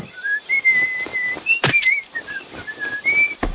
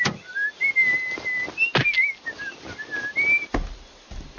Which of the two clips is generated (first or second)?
first